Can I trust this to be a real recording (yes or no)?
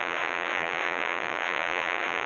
no